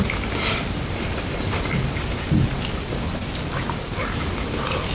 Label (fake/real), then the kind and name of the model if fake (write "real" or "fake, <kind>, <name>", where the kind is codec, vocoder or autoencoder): fake, vocoder, BigVGAN v2